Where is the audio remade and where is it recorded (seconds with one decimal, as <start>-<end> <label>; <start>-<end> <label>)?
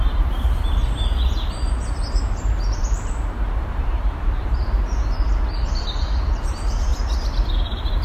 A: 0.0-0.8 remade; 0.8-2.4 recorded; 2.4-6.9 remade; 6.9-7.5 recorded; 7.5-8.0 remade